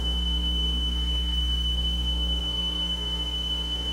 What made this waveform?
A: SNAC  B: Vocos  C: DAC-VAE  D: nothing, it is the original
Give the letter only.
A